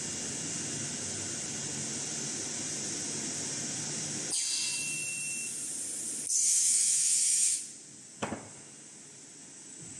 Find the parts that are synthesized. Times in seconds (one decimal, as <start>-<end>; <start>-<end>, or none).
6.5-7.6